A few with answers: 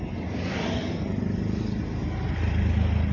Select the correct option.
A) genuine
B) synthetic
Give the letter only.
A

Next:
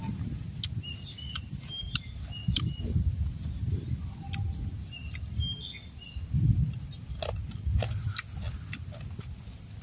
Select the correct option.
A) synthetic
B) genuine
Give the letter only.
B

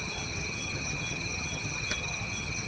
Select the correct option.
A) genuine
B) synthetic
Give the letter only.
B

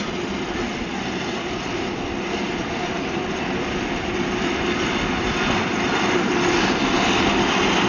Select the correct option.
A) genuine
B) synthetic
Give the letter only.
A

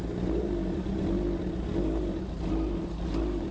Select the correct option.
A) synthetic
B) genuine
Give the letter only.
B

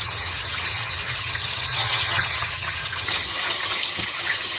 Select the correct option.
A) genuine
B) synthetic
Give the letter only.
B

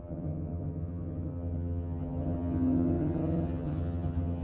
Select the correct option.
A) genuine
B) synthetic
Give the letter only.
B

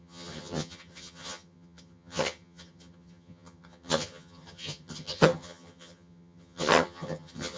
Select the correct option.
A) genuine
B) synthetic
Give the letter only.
B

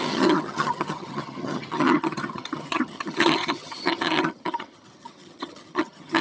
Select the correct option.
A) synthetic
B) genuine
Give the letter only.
A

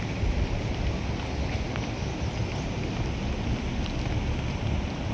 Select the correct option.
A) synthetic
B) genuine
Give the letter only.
B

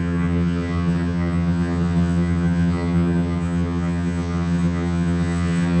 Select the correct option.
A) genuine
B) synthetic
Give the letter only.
B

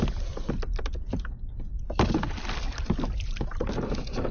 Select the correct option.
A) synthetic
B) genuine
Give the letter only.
B